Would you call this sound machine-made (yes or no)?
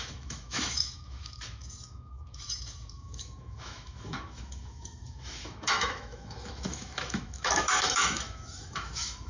yes